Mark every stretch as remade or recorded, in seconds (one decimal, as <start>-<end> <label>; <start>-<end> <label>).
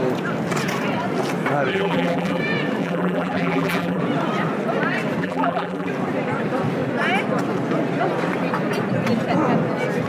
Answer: 0.0-1.7 recorded; 1.7-2.4 remade; 2.4-2.8 recorded; 2.8-4.0 remade; 4.0-5.2 recorded; 5.2-5.9 remade; 5.9-10.1 recorded